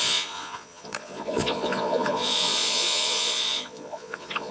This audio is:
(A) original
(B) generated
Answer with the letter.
B